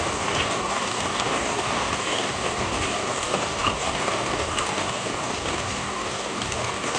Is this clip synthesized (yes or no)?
yes